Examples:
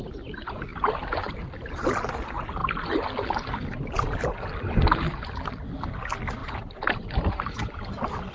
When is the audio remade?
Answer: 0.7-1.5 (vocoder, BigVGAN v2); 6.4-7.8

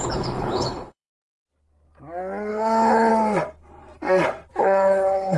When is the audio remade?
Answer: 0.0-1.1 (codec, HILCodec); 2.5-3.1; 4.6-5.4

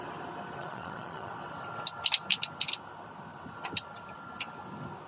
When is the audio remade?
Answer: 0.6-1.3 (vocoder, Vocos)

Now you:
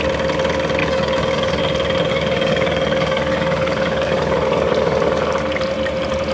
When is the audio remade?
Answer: 0.8-1.6 (codec, DAC); 2.1-5.3